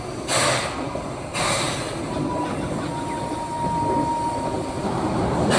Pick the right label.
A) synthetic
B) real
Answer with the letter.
B